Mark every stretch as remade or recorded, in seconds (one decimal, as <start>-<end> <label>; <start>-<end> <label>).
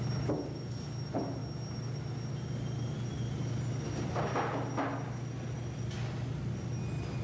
0.0-7.2 recorded